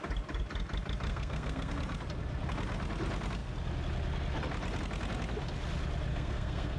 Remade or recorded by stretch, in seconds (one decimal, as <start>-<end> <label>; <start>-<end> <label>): 0.0-1.1 recorded; 1.1-1.7 remade; 1.7-6.1 recorded; 6.1-6.8 remade